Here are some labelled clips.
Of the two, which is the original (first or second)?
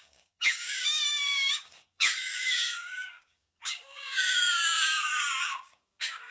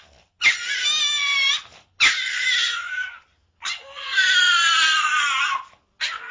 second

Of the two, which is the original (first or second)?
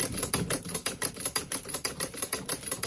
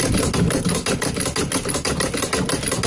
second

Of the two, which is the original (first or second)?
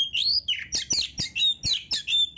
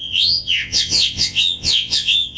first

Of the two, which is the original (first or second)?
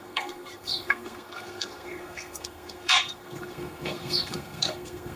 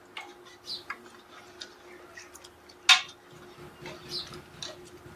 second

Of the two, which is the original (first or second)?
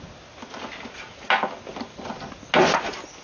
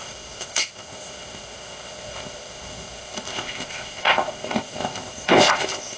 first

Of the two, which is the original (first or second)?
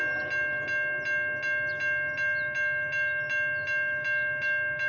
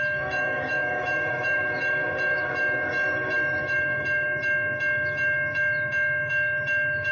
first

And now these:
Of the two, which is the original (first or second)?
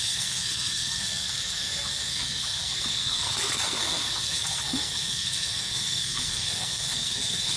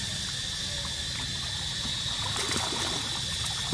second